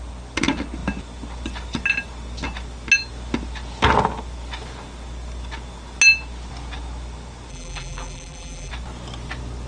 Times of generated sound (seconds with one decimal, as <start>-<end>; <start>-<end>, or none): 7.5-8.7